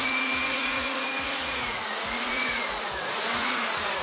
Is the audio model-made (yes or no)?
yes